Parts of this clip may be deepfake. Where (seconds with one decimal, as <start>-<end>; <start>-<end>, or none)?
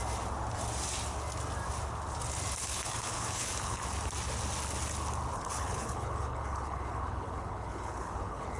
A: 2.6-3.8; 5.3-8.6